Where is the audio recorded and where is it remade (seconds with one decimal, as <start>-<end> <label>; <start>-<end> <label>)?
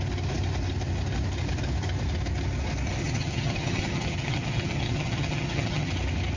0.0-3.0 recorded; 3.0-5.9 remade; 5.9-6.4 recorded